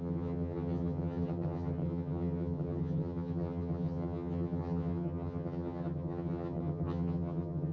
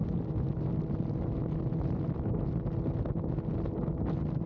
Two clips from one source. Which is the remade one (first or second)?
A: first